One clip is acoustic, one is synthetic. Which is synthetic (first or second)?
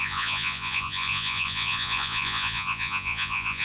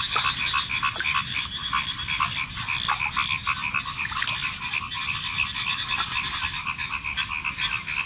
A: first